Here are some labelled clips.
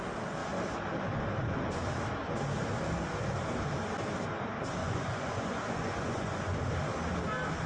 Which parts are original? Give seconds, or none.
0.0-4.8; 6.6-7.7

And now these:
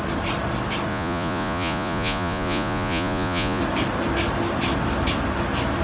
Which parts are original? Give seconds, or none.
0.0-0.9; 3.6-5.8

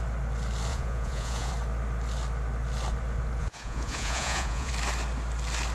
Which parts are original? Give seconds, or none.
0.0-0.7; 1.5-3.4; 4.7-5.7

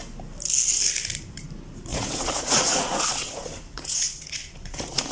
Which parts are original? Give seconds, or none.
0.0-1.9

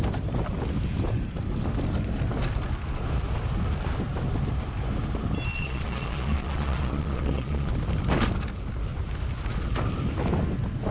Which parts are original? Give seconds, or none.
0.0-5.5; 7.7-10.9

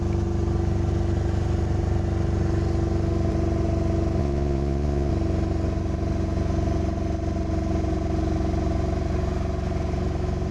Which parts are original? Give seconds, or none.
0.0-4.2; 5.1-10.5